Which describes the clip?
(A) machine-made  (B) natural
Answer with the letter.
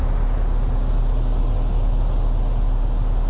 B